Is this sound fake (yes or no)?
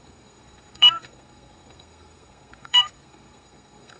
yes